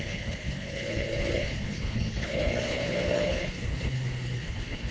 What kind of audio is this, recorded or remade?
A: remade